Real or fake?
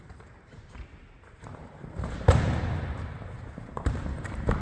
fake